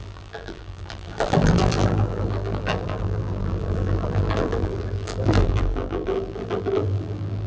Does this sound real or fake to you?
fake